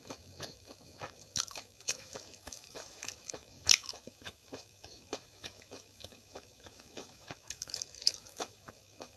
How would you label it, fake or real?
fake